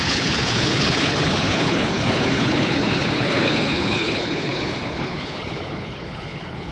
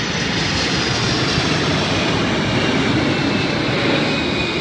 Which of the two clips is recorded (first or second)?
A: second